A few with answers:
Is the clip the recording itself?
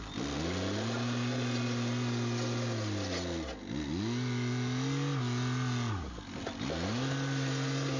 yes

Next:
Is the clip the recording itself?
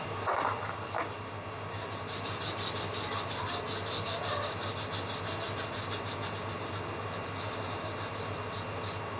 yes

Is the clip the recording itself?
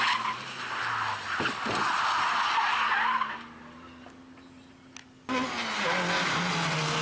yes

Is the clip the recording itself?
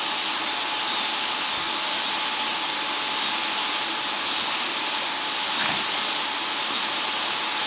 yes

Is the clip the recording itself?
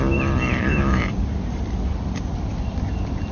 yes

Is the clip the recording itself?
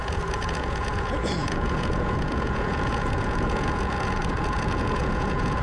no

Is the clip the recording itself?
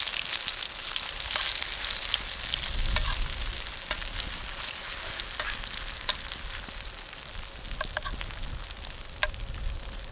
yes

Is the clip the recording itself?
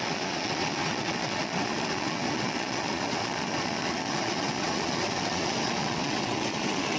no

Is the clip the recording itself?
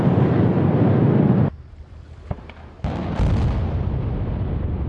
yes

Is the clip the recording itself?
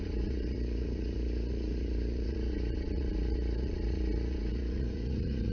no